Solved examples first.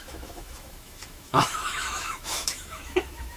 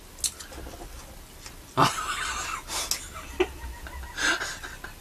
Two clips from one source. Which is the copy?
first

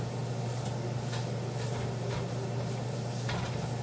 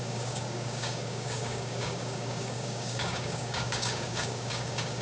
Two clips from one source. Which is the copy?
second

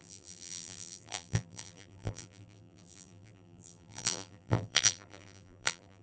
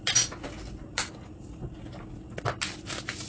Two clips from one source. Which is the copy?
first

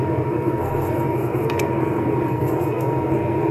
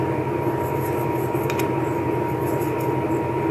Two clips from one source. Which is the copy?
first